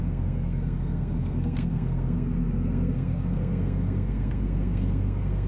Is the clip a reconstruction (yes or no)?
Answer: yes